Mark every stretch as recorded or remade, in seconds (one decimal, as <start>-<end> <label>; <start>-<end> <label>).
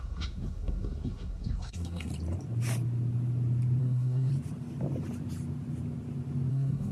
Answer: 0.0-2.1 remade; 2.1-3.8 recorded; 3.8-4.3 remade; 4.3-6.5 recorded; 6.5-6.9 remade